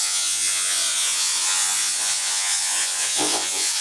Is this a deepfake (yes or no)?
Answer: yes